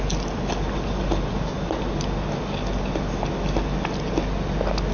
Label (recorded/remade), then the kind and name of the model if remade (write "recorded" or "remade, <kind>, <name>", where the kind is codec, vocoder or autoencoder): recorded